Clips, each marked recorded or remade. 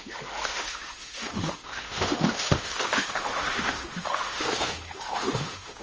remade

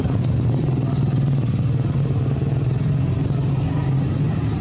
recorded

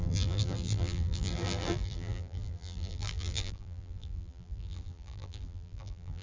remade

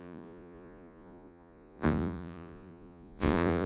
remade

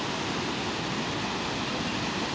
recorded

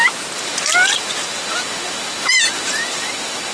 recorded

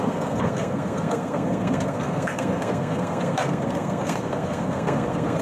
remade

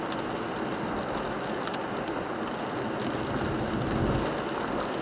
recorded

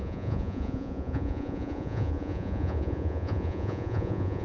remade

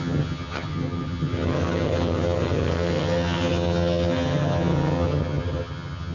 remade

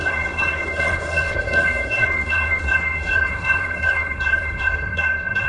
remade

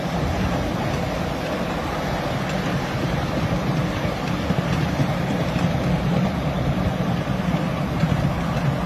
recorded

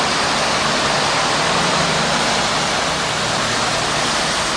recorded